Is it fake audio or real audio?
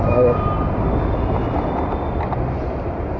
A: real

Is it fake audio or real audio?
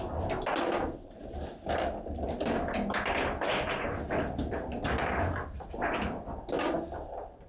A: real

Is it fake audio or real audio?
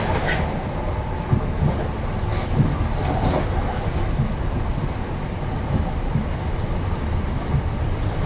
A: real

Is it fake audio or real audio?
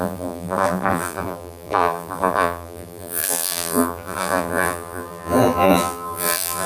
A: fake